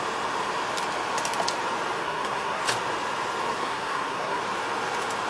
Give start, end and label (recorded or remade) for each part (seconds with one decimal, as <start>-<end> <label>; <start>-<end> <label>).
0.0-2.0 recorded; 2.0-2.6 remade; 2.6-3.6 recorded; 3.6-4.4 remade; 4.4-5.3 recorded